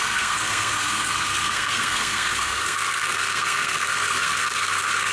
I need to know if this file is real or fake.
fake